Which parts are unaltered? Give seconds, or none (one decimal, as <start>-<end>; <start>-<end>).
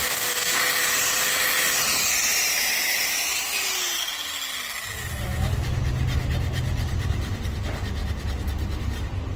0.6-9.4